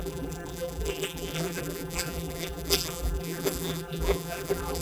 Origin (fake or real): fake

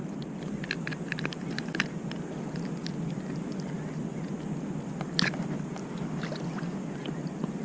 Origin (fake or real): real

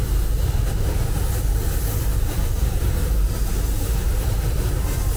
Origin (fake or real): real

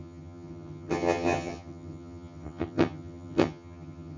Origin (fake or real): fake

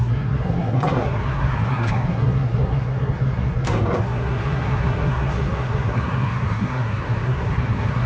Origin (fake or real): fake